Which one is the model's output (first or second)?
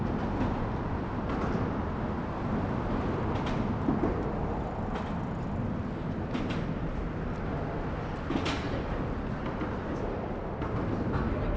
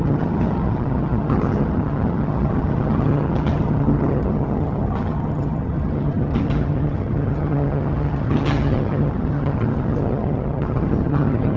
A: second